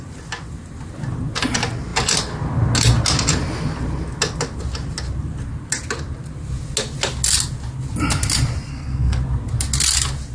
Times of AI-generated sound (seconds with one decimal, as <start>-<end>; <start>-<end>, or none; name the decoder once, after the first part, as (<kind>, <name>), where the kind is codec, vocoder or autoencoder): 8.7-9.2 (codec, SNAC)